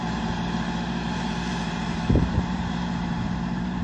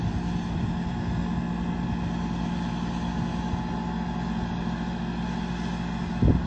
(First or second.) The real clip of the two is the second